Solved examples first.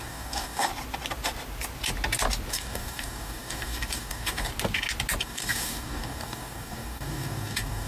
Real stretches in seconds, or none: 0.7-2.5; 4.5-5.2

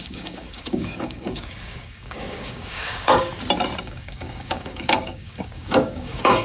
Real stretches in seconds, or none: 3.3-3.8

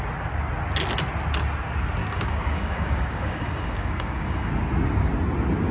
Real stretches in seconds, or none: 0.0-2.0; 4.5-5.7